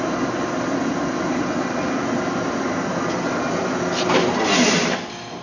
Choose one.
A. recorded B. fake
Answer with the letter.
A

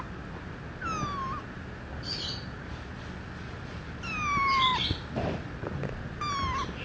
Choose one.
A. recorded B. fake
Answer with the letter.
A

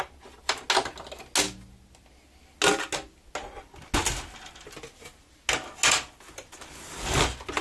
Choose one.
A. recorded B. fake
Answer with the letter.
A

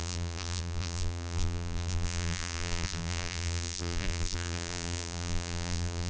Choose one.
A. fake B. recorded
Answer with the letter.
A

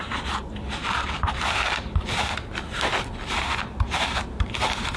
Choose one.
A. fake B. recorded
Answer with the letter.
B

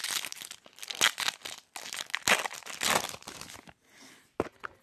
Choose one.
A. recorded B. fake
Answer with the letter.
A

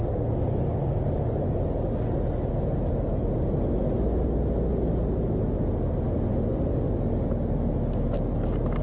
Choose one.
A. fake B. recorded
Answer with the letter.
B